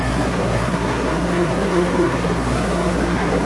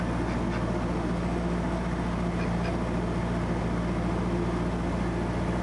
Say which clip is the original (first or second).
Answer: second